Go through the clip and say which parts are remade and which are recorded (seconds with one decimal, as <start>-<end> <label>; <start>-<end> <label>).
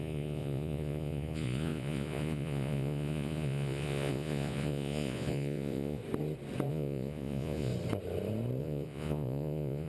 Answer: 0.0-6.0 remade; 6.0-6.7 recorded; 6.7-7.7 remade; 7.7-8.6 recorded; 8.6-9.9 remade